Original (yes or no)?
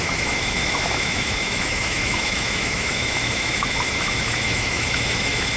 no